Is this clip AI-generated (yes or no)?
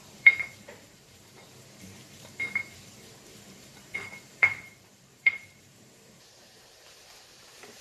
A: yes